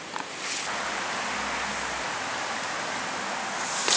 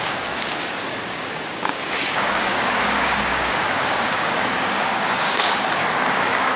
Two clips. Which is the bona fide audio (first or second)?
first